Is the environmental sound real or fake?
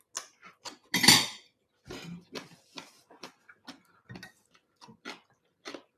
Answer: real